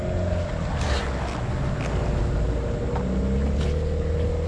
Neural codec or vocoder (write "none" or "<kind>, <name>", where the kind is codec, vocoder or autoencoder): none